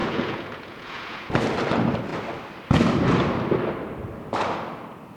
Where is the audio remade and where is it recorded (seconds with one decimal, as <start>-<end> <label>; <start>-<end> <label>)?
0.0-1.3 remade; 1.3-5.2 recorded